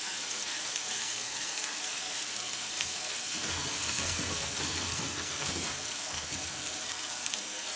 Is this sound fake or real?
fake